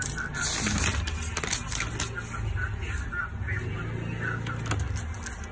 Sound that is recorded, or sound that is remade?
recorded